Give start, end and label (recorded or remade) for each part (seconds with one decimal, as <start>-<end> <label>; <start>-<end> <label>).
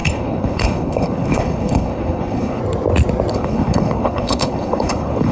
0.0-2.6 remade; 2.6-3.3 recorded; 3.3-5.3 remade